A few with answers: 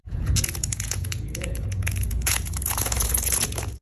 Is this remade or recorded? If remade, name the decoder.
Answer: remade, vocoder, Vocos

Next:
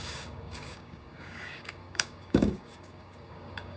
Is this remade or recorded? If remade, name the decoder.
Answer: remade, codec, DAC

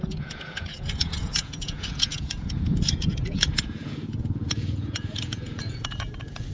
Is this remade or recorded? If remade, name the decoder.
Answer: remade, vocoder, Vocos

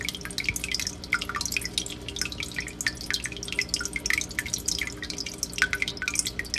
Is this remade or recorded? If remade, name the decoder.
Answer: recorded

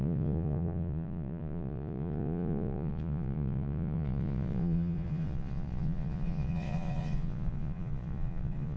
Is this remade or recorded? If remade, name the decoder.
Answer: remade, vocoder, Vocos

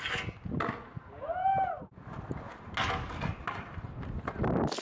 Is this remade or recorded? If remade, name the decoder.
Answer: recorded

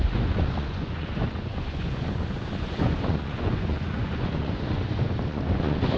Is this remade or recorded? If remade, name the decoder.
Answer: remade, vocoder, Vocos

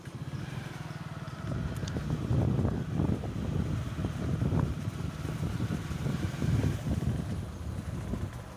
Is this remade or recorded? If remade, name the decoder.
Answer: recorded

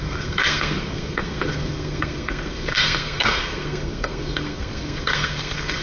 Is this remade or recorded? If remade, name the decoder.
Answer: remade, codec, SNAC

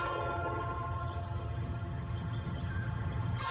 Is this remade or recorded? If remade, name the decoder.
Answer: remade, vocoder, HiFi-GAN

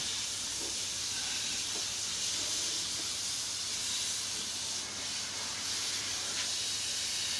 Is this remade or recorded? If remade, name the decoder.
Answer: recorded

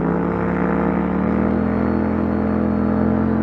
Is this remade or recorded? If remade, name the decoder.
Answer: recorded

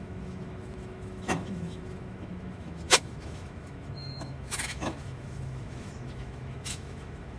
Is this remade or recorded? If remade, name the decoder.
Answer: remade, autoencoder, DAC-VAE